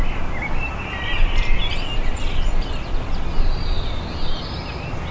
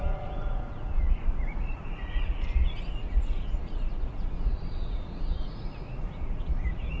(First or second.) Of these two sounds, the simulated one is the second